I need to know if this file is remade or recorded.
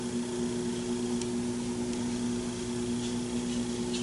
recorded